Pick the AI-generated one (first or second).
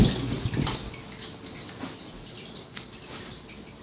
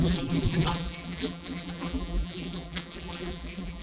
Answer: second